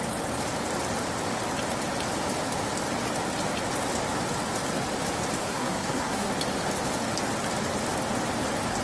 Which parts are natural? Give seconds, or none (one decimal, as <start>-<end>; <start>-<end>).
0.0-5.4; 6.3-8.8